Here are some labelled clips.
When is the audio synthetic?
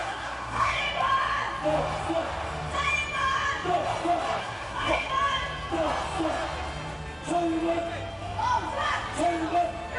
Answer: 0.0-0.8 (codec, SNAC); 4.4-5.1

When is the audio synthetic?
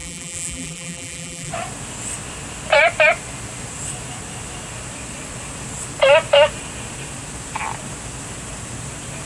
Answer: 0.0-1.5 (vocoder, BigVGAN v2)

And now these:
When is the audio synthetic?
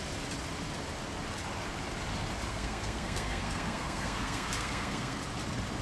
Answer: 2.5-5.2 (codec, SNAC)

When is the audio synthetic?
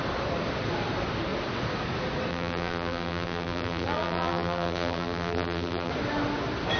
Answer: 2.3-5.9 (vocoder, BigVGAN v2)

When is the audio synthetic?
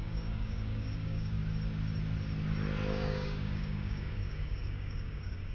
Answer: 0.0-1.4 (codec, DAC); 2.9-5.5